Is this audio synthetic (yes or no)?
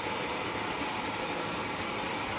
no